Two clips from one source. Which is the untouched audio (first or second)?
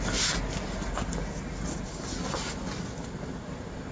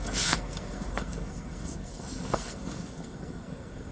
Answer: first